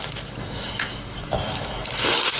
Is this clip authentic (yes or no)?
no